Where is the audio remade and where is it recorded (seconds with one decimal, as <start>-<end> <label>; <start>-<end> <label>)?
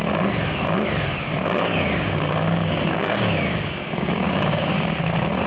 0.0-1.7 recorded; 1.7-5.0 remade; 5.0-5.5 recorded